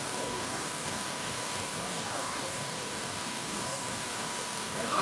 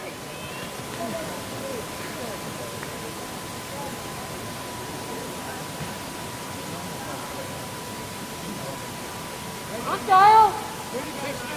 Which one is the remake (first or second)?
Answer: first